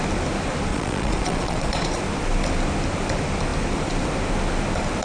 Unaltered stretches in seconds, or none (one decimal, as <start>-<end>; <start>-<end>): 0.0-0.7; 2.0-5.0